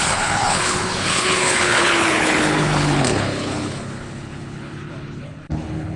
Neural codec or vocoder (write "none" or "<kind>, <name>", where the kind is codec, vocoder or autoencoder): codec, HILCodec